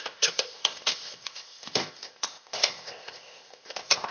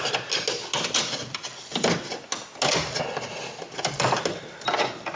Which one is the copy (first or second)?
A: first